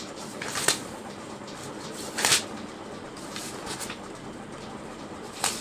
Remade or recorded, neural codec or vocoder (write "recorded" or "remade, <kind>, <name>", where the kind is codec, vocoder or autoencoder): remade, vocoder, BigVGAN v2